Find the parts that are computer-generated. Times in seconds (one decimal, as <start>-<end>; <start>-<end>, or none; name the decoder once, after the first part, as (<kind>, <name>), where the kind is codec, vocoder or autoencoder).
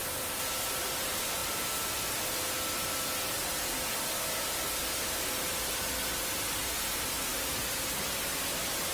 none